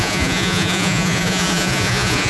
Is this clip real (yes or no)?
no